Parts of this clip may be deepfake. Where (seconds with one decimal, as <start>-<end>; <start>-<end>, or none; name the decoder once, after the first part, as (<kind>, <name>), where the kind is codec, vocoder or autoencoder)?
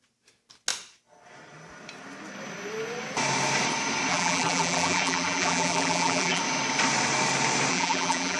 4.1-6.4 (vocoder, BigVGAN v2); 7.7-8.4